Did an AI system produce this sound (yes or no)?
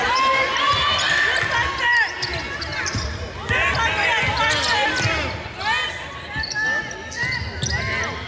no